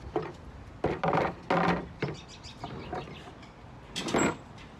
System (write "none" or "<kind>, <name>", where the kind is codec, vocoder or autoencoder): none